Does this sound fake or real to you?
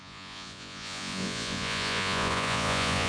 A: fake